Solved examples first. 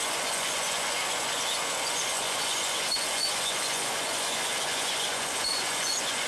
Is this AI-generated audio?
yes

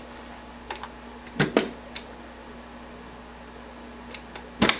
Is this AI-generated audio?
no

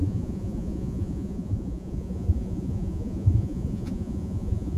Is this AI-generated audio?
yes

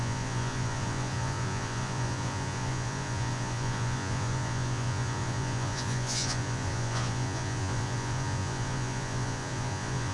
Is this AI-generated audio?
yes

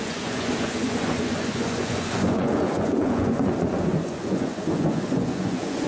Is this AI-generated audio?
yes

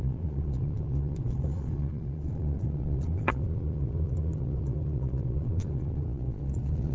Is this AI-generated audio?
yes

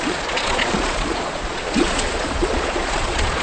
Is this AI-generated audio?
yes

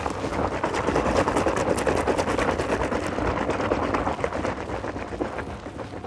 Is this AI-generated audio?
no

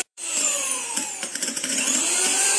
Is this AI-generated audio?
yes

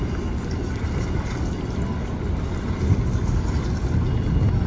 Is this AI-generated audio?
no